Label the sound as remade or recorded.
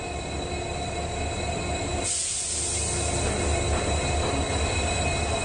recorded